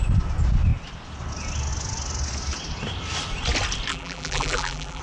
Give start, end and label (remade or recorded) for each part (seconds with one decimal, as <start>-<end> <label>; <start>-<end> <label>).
0.0-3.9 recorded; 3.9-5.0 remade